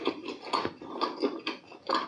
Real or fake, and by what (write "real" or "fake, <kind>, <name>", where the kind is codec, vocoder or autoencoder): real